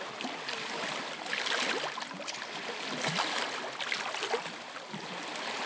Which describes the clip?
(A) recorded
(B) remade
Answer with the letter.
A